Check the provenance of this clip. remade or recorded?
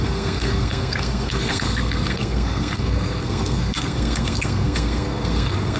remade